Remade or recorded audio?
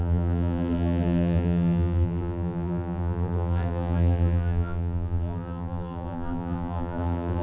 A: remade